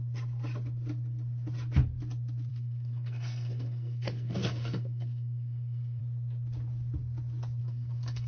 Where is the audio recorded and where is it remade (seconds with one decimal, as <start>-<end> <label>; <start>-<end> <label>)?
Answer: 0.0-2.5 recorded; 2.5-6.0 remade; 6.0-7.6 recorded; 7.6-8.3 remade